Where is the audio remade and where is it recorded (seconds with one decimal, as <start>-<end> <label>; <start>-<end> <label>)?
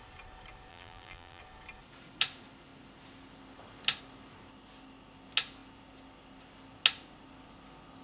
0.0-0.7 recorded; 0.7-1.4 remade; 1.4-8.0 recorded